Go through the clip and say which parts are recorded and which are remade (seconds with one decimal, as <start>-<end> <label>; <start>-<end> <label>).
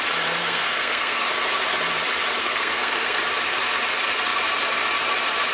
0.0-0.4 recorded; 0.4-1.3 remade; 1.3-2.4 recorded; 2.4-3.2 remade; 3.2-5.5 recorded